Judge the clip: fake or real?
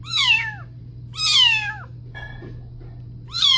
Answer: real